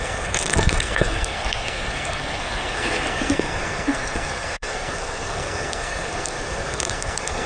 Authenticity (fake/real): fake